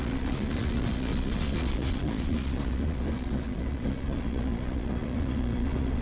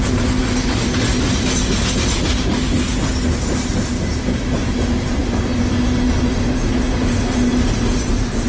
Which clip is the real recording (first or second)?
second